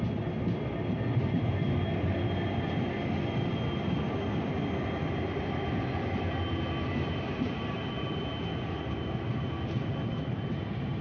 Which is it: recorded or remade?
recorded